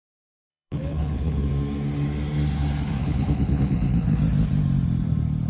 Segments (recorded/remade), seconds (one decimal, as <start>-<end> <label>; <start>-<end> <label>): 0.0-0.5 recorded; 0.5-1.5 remade; 1.5-3.0 recorded; 3.0-4.2 remade; 4.2-5.5 recorded